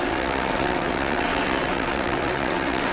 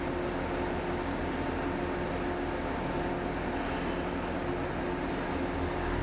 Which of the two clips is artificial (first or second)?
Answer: first